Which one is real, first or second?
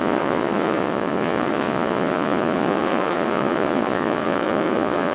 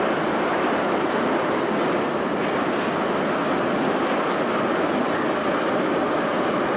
second